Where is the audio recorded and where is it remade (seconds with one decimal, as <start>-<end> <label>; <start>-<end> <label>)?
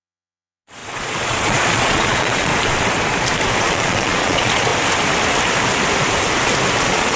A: 0.0-2.5 remade; 2.5-3.6 recorded; 3.6-4.7 remade; 4.7-6.8 recorded; 6.8-7.2 remade